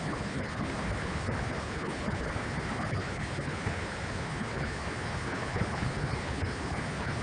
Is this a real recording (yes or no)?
no